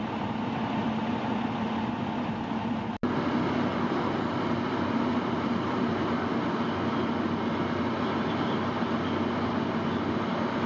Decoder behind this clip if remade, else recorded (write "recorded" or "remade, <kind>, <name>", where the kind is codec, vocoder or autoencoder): recorded